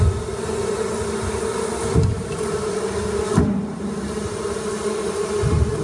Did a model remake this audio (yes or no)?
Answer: no